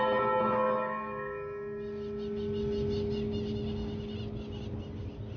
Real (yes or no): yes